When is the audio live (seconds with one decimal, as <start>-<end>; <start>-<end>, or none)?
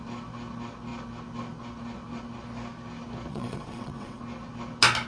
0.0-3.3; 4.2-5.1